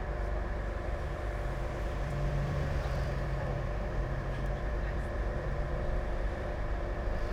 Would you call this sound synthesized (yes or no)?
yes